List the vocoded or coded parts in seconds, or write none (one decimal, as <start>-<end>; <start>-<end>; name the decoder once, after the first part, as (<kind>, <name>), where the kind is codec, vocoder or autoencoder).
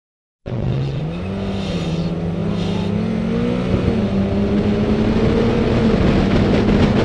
0.4-1.0 (vocoder, WaveNeXt)